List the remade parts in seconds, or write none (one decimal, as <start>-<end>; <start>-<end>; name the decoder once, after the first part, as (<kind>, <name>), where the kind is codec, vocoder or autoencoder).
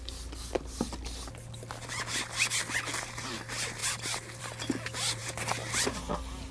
none